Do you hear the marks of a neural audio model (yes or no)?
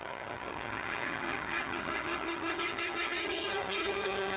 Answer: yes